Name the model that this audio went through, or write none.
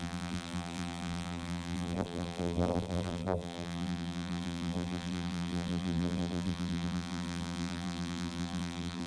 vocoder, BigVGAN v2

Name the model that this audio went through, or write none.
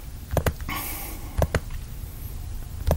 none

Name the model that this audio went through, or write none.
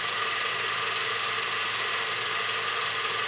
none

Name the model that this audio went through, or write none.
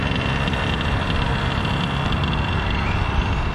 none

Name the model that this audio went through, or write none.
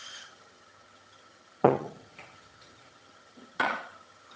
vocoder, HiFi-GAN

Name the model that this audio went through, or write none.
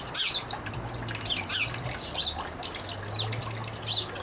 none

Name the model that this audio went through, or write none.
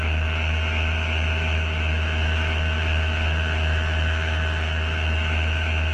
autoencoder, DAC-VAE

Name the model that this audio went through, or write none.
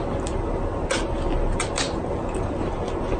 none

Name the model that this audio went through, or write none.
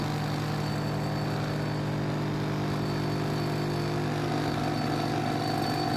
none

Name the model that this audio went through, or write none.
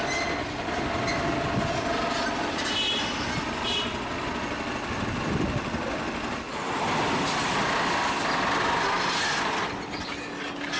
none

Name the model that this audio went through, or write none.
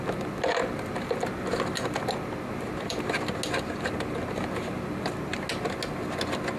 none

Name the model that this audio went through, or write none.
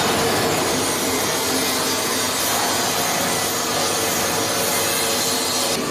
none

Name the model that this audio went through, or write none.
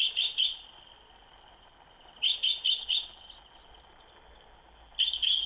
none